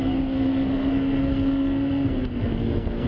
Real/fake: fake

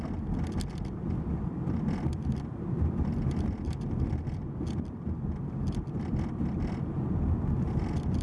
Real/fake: fake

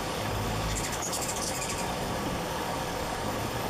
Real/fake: fake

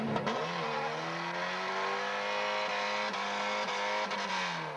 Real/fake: real